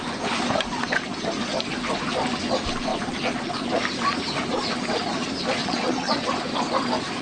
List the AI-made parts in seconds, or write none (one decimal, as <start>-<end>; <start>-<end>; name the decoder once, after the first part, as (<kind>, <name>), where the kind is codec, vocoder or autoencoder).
5.6-6.3 (vocoder, WaveNeXt)